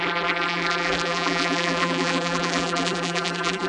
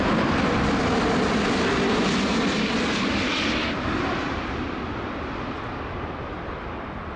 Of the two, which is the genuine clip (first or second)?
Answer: second